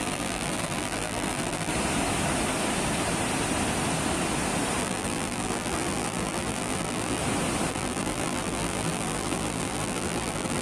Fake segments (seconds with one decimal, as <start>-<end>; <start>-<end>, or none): 0.0-1.7; 4.8-7.2; 7.7-10.6